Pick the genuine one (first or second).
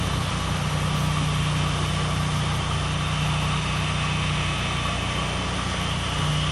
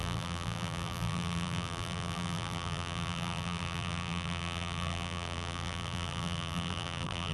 first